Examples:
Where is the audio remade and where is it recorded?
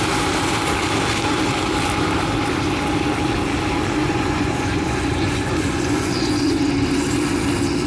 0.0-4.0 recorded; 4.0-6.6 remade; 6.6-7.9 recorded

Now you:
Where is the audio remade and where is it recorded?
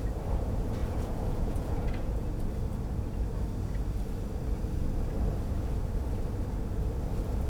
0.0-0.8 recorded; 0.8-2.3 remade; 2.3-7.5 recorded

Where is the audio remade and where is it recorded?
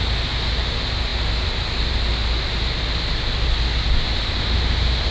0.0-5.1 recorded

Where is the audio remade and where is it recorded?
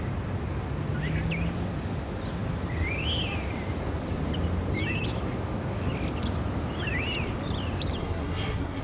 0.0-8.0 recorded; 8.0-8.8 remade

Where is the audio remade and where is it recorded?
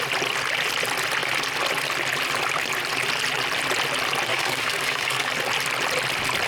0.0-4.3 recorded; 4.3-5.3 remade; 5.3-6.5 recorded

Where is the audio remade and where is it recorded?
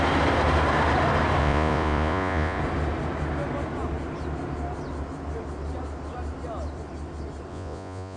0.0-1.4 recorded; 1.4-2.6 remade; 2.6-7.5 recorded; 7.5-8.2 remade